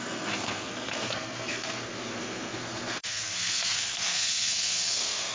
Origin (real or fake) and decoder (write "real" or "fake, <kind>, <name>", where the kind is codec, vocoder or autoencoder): fake, codec, SNAC